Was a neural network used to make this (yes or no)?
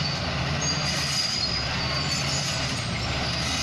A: no